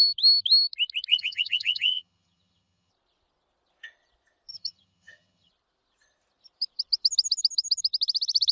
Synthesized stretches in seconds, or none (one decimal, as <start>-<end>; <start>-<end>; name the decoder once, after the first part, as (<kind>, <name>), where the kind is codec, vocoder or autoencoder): 1.1-2.9 (vocoder, HiFi-GAN); 4.5-5.5